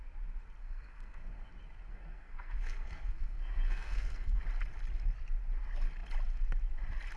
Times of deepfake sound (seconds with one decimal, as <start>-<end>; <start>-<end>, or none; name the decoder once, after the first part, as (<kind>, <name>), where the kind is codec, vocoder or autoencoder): 0.6-1.5 (codec, SNAC); 1.9-4.4